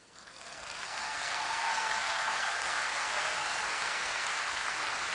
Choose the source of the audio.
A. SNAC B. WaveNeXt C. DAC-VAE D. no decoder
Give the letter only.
A